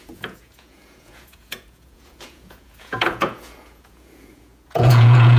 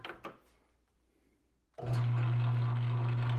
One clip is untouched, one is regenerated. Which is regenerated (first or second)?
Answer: first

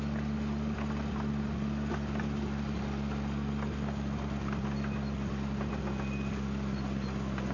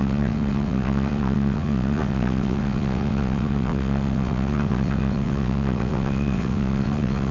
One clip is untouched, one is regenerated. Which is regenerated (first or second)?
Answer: second